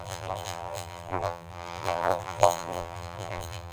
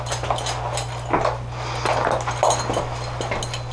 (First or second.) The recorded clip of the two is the second